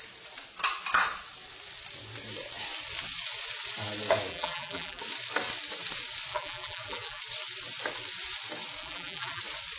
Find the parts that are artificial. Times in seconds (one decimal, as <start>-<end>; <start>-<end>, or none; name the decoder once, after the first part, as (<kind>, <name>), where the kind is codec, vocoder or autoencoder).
4.3-5.0 (vocoder, BigVGAN v2); 6.3-7.2; 8.8-9.4